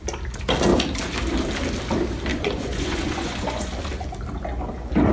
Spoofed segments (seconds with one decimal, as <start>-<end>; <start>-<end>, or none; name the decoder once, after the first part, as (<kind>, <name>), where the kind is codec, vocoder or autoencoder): 2.3-3.7 (vocoder, Vocos)